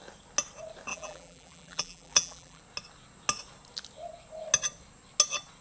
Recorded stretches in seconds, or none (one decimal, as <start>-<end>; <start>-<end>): 0.0-0.9; 2.6-5.6